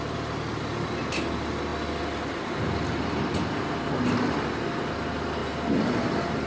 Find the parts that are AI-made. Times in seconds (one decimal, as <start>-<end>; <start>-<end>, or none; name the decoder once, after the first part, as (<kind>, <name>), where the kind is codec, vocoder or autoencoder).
none

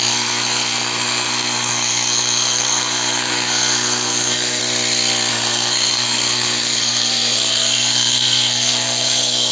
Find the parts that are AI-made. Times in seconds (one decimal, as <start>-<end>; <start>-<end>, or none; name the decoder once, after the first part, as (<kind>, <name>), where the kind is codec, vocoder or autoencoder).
0.0-4.6 (codec, SNAC); 5.3-9.5

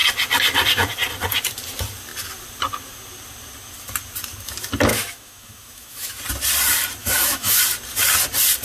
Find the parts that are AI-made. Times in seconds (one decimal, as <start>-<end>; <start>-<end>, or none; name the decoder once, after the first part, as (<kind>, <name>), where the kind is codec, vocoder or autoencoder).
4.9-6.2 (autoencoder, DAC-VAE); 7.0-7.6

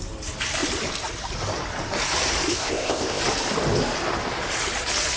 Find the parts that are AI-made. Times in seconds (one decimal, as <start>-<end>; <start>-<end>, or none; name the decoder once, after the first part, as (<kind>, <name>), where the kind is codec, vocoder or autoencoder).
2.5-3.2 (codec, ZipCodec)

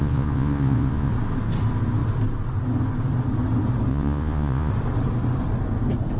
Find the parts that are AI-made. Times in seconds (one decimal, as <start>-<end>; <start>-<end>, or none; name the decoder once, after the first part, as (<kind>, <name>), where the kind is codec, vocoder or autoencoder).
0.0-1.1 (vocoder, Vocos); 3.9-4.7

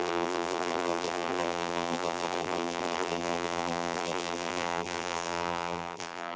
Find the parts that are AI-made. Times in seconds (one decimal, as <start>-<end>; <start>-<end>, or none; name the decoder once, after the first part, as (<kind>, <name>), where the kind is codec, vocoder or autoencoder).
0.0-6.4 (vocoder, BigVGAN v2)